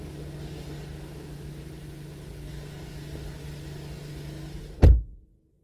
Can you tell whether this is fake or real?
real